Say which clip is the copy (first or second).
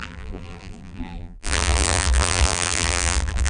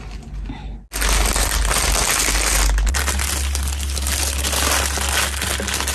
first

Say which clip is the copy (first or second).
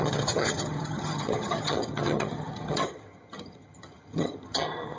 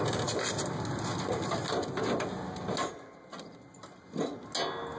first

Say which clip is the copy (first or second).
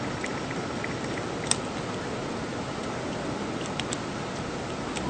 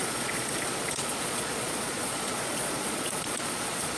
second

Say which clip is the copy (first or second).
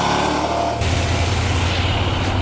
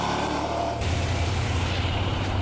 second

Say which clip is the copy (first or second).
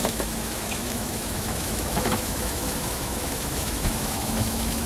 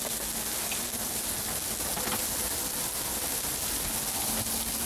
first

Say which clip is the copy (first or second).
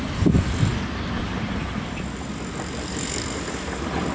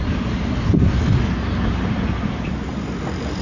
first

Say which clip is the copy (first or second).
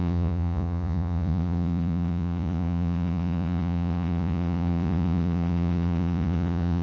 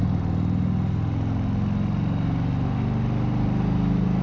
first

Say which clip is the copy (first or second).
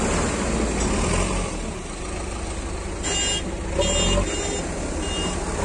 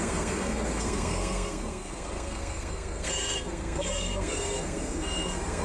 second